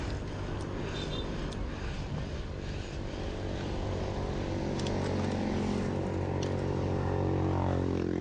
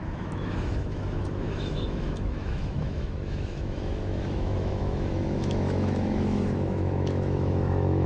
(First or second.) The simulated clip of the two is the second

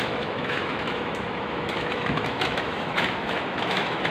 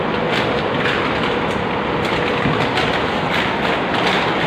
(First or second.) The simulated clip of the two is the first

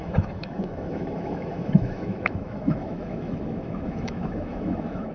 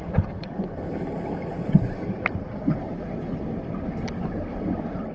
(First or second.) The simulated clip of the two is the first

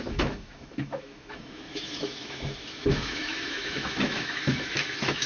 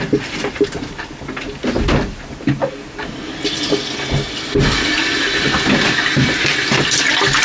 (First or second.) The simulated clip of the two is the first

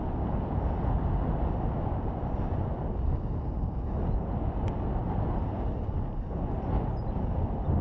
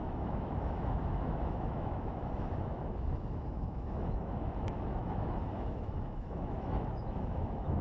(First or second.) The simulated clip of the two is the second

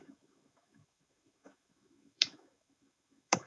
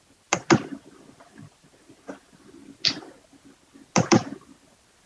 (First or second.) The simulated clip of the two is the first